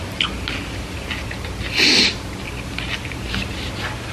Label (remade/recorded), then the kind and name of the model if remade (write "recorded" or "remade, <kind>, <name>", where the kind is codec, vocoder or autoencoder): recorded